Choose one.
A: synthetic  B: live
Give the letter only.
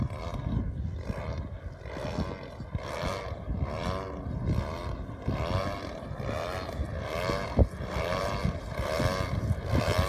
B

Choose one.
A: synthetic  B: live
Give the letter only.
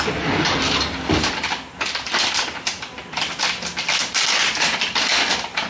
B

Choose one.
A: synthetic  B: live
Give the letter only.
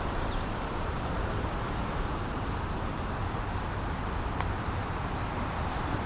B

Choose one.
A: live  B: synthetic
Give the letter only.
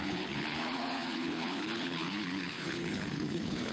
B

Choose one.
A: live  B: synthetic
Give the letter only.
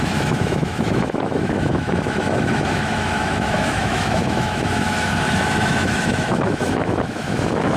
B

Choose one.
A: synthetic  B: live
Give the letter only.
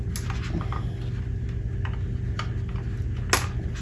B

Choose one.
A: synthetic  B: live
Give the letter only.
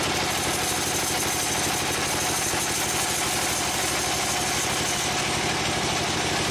B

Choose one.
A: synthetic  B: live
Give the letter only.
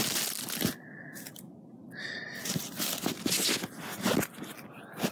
B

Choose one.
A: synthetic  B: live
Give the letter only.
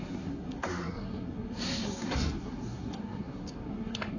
A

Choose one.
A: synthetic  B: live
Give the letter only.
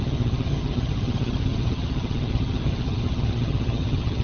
A